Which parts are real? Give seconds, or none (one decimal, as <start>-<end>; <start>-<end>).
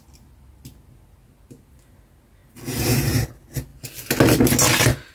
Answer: 0.0-5.1